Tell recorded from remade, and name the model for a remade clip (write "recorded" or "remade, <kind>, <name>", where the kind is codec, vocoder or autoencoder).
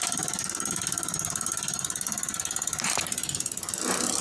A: recorded